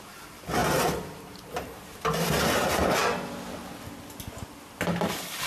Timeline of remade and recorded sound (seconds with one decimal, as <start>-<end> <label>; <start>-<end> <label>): 0.0-5.5 recorded